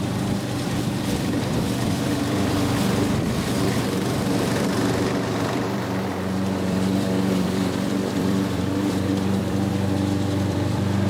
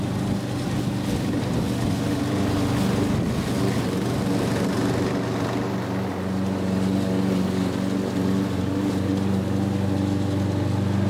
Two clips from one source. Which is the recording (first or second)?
second